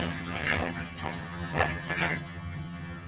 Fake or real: fake